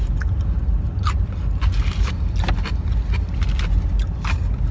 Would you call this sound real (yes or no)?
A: yes